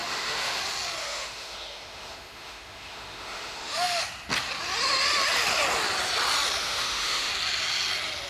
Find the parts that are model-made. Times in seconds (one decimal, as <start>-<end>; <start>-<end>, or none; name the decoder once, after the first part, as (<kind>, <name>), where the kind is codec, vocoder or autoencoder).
0.0-0.6 (autoencoder, DAC-VAE); 1.0-4.0; 6.6-7.3